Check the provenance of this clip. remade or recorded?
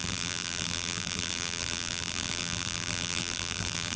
remade